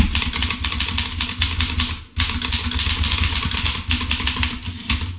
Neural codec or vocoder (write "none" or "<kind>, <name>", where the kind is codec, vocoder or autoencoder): none